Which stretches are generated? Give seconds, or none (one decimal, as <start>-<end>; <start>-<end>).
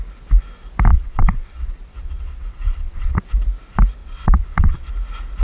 0.9-3.2; 4.0-4.9